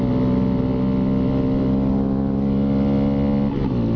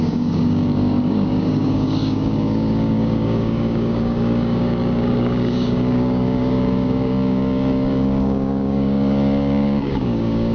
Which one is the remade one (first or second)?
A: second